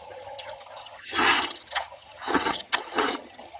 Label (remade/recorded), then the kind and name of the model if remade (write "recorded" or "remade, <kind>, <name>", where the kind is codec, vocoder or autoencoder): remade, vocoder, HiFi-GAN